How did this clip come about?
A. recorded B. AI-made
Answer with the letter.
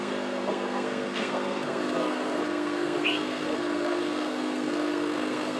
B